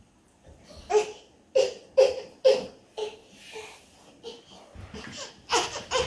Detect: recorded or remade recorded